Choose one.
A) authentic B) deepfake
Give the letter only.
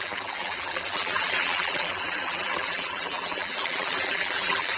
B